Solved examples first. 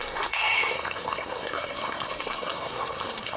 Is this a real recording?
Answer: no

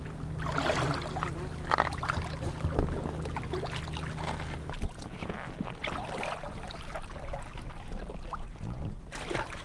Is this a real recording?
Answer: yes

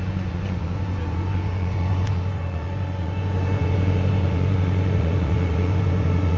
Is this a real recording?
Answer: no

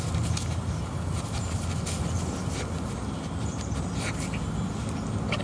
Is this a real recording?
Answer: yes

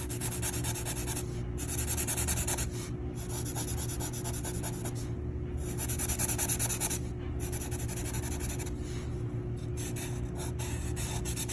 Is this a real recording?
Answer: yes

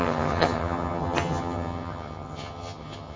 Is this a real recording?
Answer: no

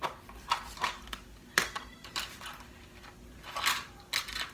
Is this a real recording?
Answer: yes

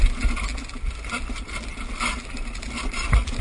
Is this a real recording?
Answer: yes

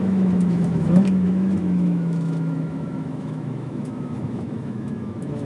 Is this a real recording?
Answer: no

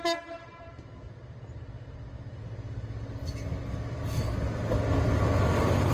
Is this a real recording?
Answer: yes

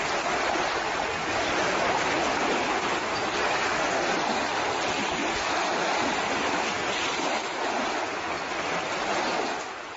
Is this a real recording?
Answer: yes